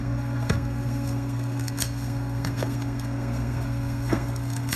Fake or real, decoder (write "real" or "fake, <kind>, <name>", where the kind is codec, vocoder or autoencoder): fake, codec, SNAC